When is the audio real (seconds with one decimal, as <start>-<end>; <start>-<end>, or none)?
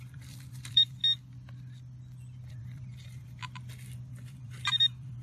1.0-2.5; 3.4-4.1